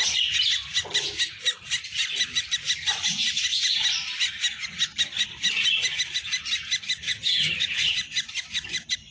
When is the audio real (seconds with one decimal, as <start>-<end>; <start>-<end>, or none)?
0.0-7.0; 7.9-9.1